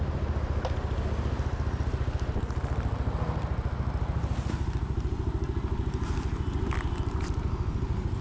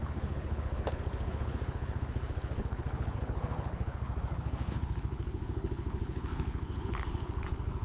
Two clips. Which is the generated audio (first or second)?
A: second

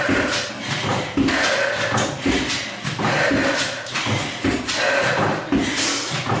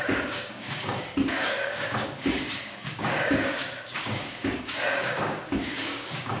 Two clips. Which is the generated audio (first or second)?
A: second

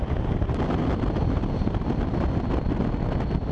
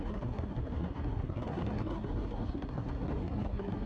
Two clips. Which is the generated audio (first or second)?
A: second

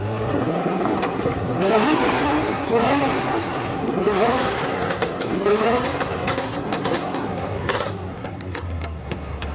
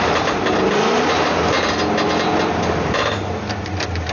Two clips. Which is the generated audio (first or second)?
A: first